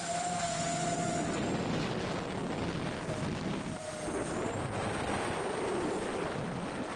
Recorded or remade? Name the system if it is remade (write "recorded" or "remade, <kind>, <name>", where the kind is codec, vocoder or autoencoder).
recorded